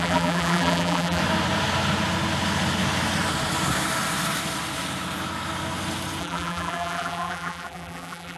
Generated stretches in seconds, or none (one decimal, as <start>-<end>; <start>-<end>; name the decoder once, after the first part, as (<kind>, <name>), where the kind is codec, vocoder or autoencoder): 0.0-1.2 (vocoder, BigVGAN v2); 6.2-8.4